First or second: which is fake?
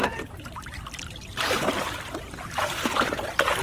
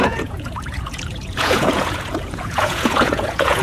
second